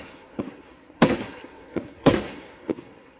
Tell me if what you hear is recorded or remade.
remade